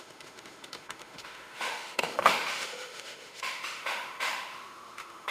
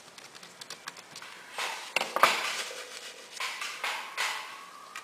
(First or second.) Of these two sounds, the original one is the second